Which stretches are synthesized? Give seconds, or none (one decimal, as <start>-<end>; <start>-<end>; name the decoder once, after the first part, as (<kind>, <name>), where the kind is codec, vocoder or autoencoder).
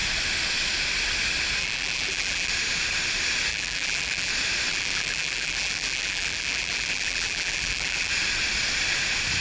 1.6-2.5 (vocoder, BigVGAN v2); 3.5-4.3; 4.7-8.1